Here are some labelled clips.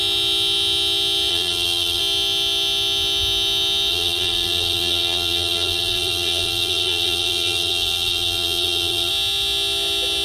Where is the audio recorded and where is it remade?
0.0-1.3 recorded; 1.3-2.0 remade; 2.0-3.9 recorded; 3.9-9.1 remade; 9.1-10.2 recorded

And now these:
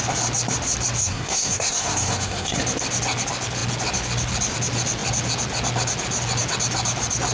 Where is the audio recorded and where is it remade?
0.0-1.0 recorded; 1.0-2.6 remade; 2.6-7.3 recorded

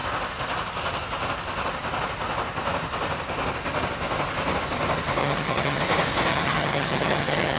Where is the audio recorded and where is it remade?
0.0-5.2 recorded; 5.2-5.8 remade; 5.8-6.3 recorded; 6.3-7.6 remade

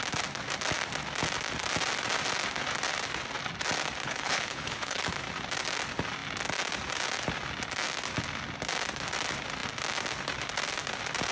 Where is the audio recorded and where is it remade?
0.0-4.0 recorded; 4.0-5.0 remade; 5.0-11.3 recorded